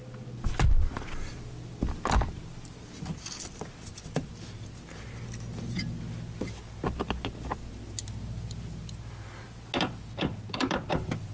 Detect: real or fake real